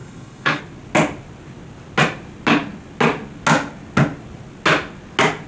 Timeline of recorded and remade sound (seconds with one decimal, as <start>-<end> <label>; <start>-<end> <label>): 0.0-0.6 remade; 0.6-5.5 recorded